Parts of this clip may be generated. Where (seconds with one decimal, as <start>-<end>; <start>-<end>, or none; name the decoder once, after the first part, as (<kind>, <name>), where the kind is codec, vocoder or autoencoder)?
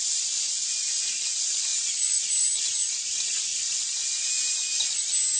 none